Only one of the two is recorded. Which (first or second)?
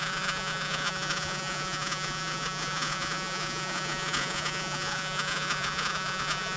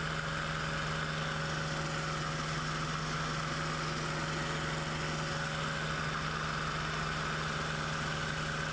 second